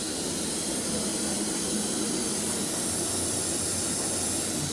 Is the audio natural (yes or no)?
yes